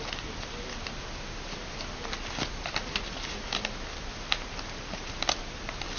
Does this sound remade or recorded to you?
recorded